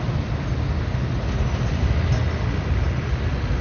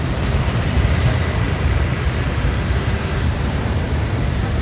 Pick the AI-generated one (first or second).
second